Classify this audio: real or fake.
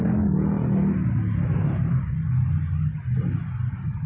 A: real